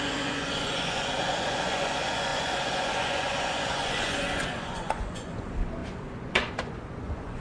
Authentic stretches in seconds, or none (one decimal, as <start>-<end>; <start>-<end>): none